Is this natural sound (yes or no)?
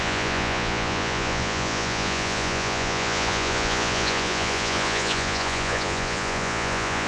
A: no